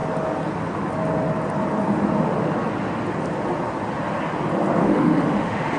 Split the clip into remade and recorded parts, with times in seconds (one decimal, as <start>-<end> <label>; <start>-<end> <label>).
0.0-4.8 recorded; 4.8-5.8 remade